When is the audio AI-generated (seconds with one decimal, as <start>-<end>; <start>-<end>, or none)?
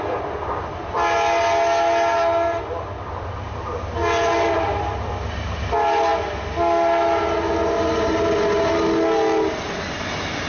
none